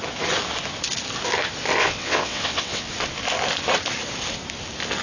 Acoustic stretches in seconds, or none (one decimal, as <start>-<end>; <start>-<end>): 0.0-1.8; 2.9-5.0